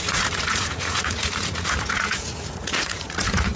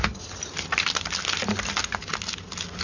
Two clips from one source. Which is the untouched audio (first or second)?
second